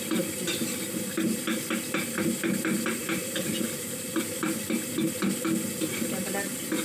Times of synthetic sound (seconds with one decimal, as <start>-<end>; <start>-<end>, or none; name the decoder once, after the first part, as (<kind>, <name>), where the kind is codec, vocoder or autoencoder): 3.0-4.5 (vocoder, BigVGAN v2)